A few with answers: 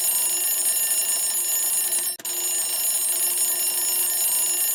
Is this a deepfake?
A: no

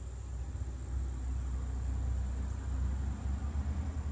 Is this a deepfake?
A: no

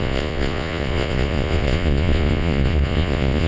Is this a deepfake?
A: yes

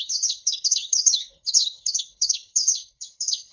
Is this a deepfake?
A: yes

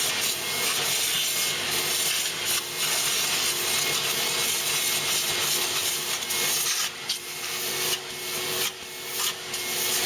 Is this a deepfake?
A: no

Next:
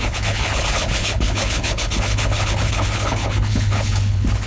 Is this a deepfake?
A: yes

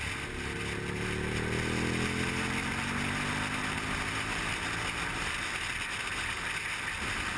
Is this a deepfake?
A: no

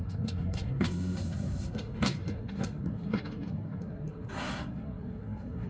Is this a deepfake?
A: yes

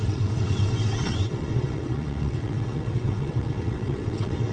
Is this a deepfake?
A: yes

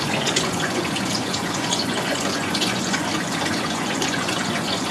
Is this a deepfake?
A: yes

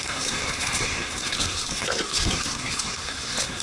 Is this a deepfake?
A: yes